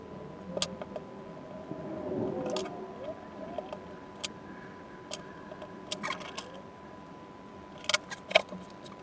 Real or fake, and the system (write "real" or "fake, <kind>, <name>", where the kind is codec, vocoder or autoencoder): real